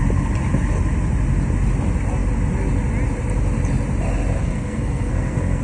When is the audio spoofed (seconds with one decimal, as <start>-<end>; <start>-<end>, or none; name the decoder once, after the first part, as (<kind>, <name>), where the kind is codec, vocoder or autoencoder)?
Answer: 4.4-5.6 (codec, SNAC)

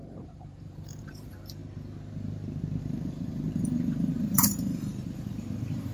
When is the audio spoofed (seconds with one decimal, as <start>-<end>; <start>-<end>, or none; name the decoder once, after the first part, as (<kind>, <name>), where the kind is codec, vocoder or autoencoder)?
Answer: 0.0-1.6 (vocoder, BigVGAN v2); 2.8-5.9

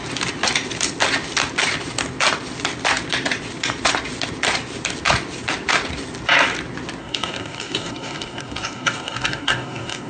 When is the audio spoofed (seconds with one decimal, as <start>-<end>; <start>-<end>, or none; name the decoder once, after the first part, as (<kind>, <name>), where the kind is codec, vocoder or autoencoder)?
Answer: 7.0-10.1 (codec, DAC)